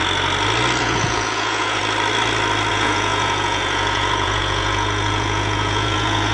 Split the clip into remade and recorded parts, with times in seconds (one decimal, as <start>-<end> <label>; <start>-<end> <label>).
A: 0.0-0.8 recorded; 0.8-1.8 remade; 1.8-2.7 recorded; 2.7-6.3 remade